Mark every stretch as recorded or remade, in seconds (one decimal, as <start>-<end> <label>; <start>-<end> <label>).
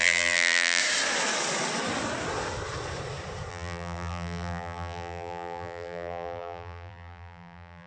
0.0-0.8 remade; 0.8-3.5 recorded; 3.5-7.9 remade